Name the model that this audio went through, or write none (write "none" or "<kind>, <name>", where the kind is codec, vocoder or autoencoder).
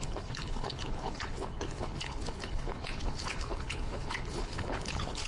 codec, HILCodec